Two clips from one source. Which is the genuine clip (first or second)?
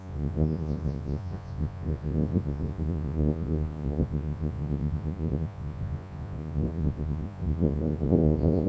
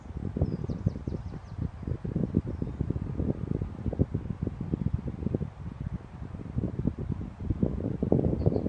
second